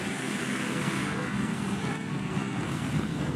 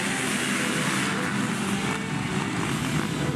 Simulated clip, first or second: first